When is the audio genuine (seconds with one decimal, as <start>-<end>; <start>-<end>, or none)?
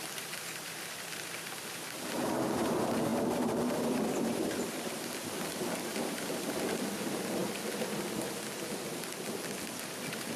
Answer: 0.0-10.4